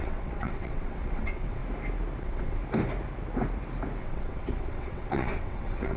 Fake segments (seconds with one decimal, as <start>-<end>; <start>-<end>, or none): 0.0-1.6; 2.2-2.6; 4.0-6.0